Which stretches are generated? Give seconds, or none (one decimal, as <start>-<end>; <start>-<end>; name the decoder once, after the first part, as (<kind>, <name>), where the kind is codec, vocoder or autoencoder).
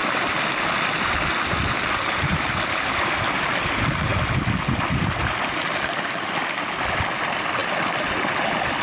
none